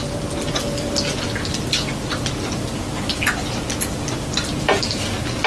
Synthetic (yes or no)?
no